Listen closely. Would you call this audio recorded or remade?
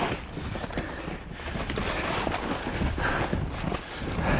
recorded